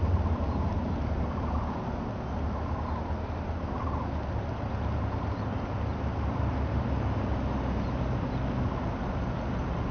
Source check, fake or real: real